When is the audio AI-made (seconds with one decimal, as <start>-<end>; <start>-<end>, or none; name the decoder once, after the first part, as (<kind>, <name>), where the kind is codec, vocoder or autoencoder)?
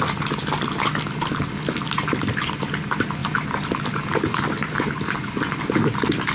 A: none